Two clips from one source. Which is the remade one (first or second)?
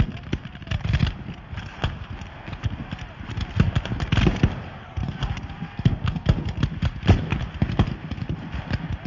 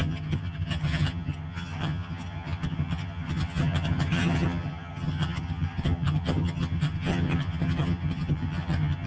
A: second